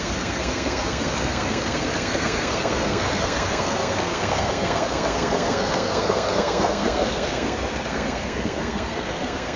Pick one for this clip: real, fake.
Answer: fake